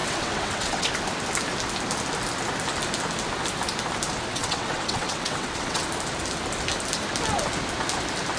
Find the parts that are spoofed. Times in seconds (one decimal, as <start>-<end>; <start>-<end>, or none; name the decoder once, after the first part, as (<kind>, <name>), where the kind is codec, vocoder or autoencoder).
0.0-0.9 (vocoder, WaveNeXt); 4.3-5.8